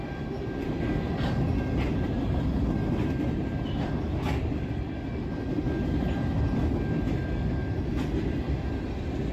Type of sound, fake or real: real